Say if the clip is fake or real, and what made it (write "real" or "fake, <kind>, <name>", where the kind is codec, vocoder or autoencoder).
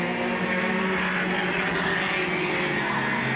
real